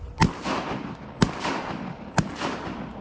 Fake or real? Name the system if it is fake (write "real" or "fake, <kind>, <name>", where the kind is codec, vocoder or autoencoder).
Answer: real